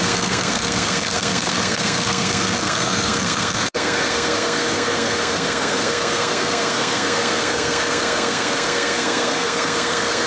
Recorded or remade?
remade